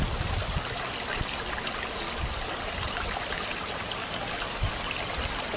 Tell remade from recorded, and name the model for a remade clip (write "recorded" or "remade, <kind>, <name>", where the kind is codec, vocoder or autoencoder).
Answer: recorded